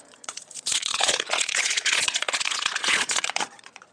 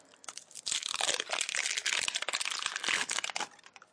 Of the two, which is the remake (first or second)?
first